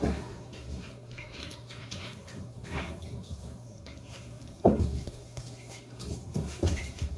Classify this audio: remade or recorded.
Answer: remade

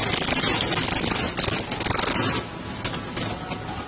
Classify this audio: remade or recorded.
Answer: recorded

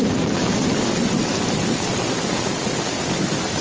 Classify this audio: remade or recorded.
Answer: recorded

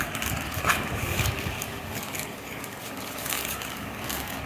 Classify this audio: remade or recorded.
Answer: remade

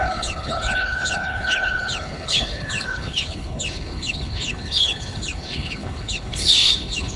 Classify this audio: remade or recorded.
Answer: remade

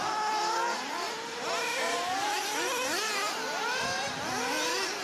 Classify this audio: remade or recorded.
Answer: recorded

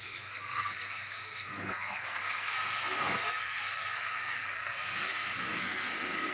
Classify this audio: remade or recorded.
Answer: remade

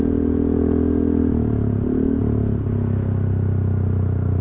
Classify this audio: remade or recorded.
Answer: recorded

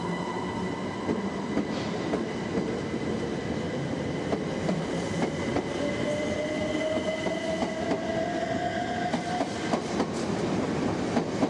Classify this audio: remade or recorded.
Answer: recorded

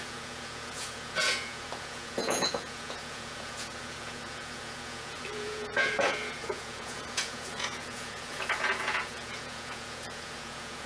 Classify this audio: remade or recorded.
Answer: remade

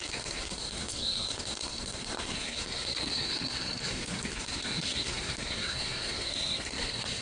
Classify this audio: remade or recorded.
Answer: remade